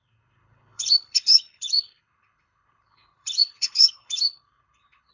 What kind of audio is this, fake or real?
fake